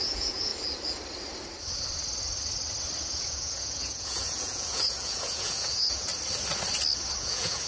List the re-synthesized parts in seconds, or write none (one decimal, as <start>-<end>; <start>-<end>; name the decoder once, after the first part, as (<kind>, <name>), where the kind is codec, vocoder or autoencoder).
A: 0.0-0.5 (vocoder, Vocos); 3.0-6.1; 7.2-7.7